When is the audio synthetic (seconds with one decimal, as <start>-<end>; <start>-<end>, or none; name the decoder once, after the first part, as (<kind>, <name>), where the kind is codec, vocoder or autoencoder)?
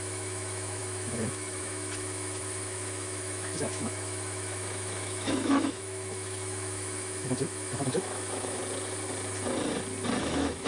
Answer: 0.0-8.6 (autoencoder, DAC-VAE); 10.2-10.7